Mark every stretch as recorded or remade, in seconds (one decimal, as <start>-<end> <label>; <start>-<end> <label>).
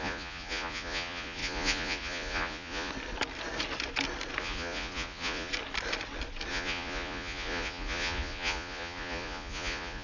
0.0-2.9 remade; 2.9-4.4 recorded; 4.4-5.5 remade; 5.5-6.5 recorded; 6.5-10.0 remade